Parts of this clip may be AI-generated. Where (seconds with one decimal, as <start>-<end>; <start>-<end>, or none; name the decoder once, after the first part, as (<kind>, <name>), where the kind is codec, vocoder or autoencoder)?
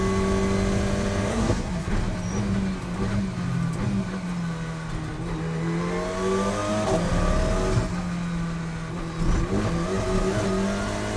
1.3-1.9 (codec, SNAC)